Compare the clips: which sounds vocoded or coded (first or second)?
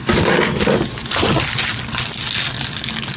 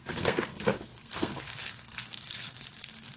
second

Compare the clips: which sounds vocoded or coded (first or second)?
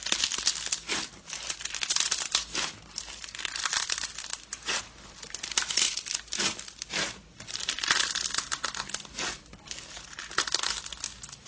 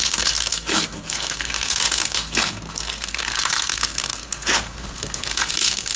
second